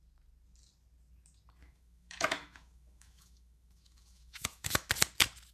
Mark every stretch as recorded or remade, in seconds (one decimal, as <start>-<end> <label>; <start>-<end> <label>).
0.0-1.6 recorded; 1.6-4.9 remade; 4.9-5.5 recorded